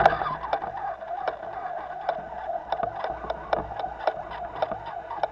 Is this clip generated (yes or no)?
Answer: no